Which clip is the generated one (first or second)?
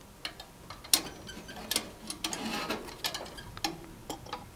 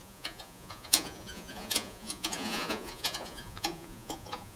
second